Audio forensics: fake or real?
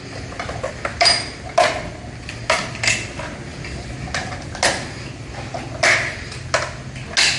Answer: real